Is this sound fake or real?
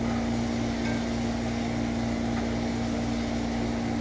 real